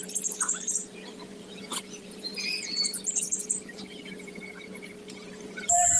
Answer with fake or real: fake